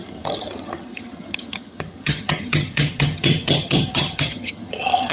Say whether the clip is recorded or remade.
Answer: remade